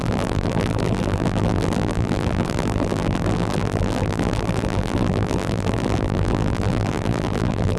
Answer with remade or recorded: remade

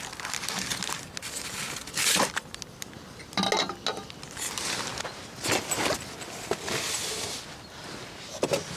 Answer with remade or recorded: recorded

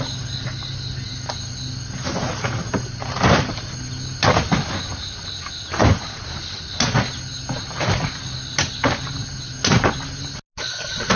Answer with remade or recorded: recorded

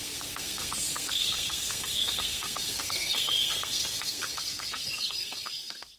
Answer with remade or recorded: remade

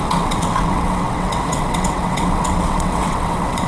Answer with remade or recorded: remade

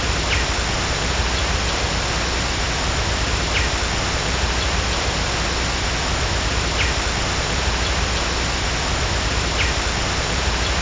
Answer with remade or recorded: recorded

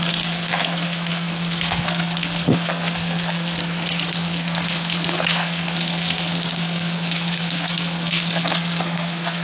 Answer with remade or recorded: remade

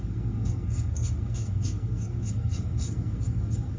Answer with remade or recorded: remade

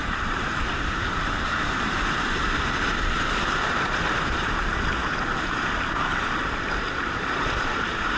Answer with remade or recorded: remade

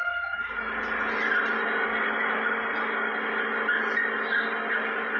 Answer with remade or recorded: recorded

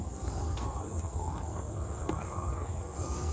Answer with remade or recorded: remade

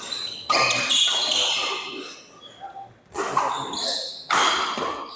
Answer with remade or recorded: recorded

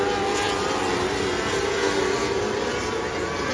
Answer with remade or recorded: recorded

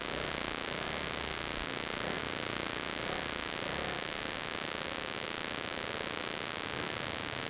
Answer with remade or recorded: recorded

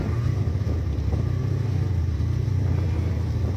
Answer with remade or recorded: recorded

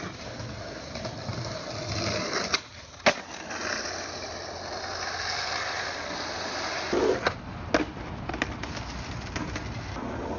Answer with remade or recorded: recorded